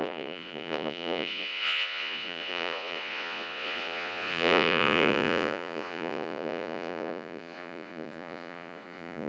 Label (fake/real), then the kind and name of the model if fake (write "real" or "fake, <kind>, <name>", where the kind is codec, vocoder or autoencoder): fake, vocoder, Vocos